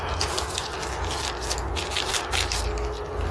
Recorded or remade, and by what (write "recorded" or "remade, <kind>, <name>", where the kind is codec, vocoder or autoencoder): recorded